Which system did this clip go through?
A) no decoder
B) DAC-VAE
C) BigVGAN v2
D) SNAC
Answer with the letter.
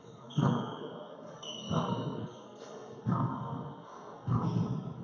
D